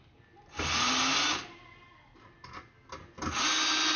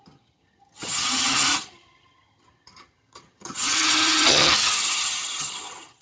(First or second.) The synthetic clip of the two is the second